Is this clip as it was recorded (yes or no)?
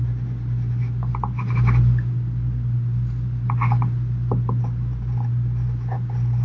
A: yes